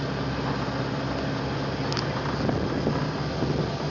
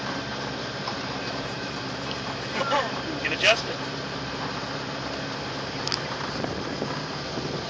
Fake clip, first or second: second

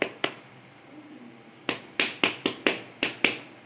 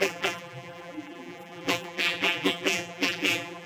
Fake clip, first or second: second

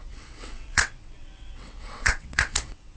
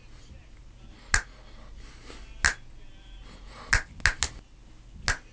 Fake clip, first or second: first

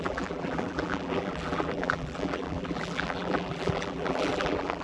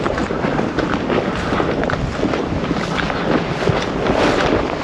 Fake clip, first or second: first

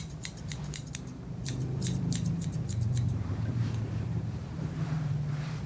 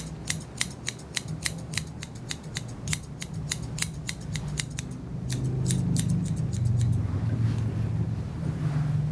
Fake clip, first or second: first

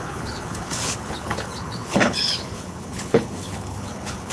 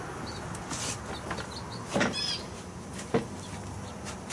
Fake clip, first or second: first